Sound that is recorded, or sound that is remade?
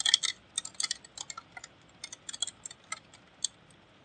recorded